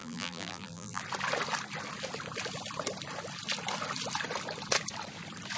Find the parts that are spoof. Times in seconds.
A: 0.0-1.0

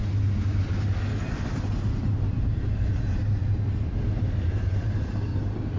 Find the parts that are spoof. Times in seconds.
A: 3.5-5.8